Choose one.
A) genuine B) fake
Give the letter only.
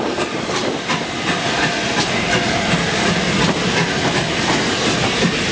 A